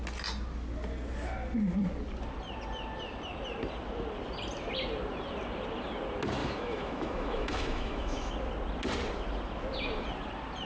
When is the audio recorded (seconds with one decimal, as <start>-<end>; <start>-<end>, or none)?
0.0-6.4; 8.3-10.6